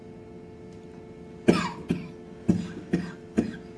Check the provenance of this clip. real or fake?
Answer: real